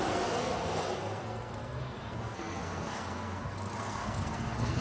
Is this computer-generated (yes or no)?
yes